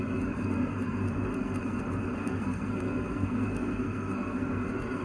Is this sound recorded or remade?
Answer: remade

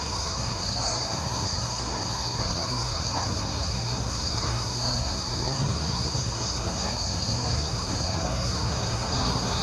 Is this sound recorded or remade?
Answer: remade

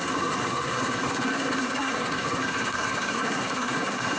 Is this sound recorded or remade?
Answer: remade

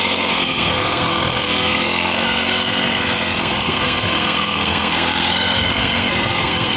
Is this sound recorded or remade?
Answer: remade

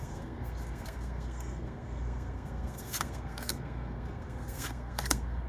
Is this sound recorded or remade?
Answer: remade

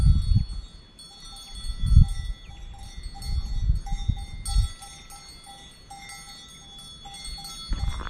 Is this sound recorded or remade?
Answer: recorded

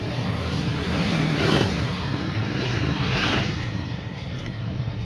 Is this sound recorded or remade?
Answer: remade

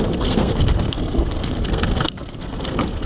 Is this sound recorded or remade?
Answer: remade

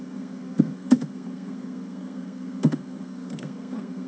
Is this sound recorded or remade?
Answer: remade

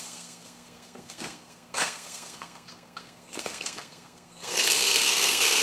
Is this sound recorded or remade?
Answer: remade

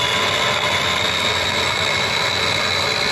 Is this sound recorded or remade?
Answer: recorded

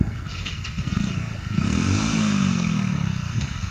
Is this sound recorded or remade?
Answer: remade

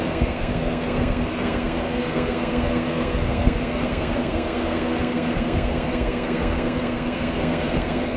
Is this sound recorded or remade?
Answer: remade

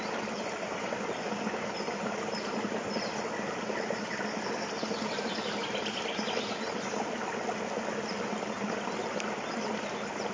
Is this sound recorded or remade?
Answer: recorded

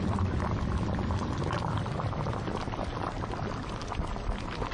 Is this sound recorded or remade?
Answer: recorded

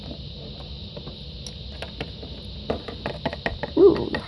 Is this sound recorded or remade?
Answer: recorded